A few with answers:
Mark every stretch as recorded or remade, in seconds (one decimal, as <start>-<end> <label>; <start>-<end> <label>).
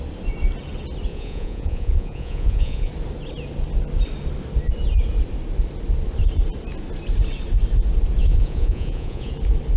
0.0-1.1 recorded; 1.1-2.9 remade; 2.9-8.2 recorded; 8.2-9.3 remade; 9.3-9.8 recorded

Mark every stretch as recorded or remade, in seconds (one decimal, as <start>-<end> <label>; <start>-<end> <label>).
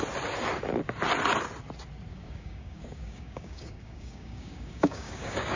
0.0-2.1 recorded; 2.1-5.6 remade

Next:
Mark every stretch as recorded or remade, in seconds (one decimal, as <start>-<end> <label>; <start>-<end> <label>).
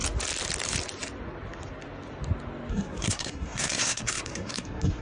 0.0-2.7 recorded; 2.7-5.0 remade